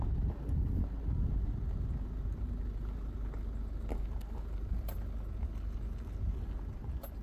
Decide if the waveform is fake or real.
real